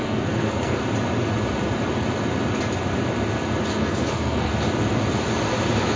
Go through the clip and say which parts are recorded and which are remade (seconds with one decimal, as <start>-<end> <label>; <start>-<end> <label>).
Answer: 0.0-0.8 remade; 0.8-3.7 recorded; 3.7-4.5 remade; 4.5-6.0 recorded